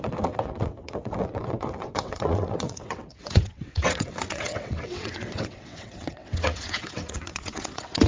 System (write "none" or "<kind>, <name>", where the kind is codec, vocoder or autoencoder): vocoder, WaveNeXt